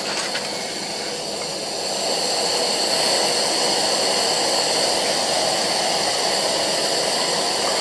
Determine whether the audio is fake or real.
real